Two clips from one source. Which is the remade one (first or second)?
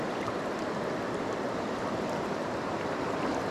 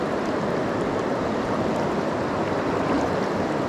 first